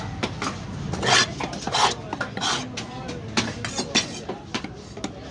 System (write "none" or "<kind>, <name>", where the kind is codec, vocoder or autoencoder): none